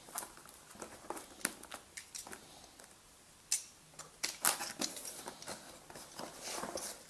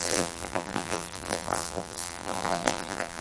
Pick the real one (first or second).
first